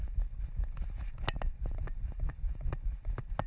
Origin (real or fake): real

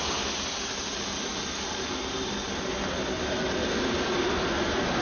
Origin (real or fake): real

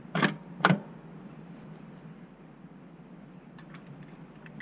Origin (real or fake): fake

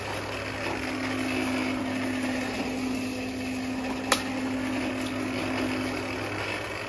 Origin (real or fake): real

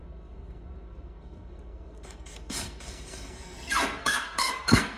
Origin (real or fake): fake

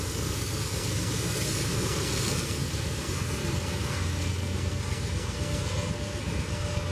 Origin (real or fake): fake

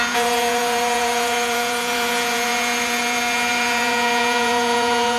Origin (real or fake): fake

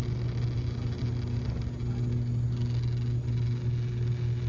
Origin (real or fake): real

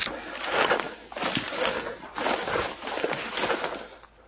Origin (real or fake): real